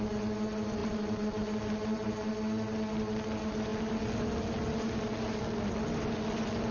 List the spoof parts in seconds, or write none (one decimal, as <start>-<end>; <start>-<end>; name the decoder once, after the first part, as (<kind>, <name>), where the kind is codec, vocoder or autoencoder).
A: 0.8-2.3 (vocoder, BigVGAN v2)